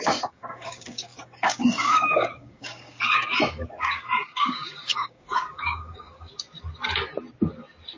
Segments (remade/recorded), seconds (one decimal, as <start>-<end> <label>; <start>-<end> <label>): 0.0-6.3 remade; 6.3-8.0 recorded